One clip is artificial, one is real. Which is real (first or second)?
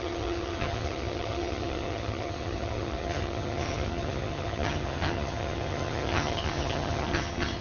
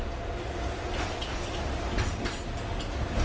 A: second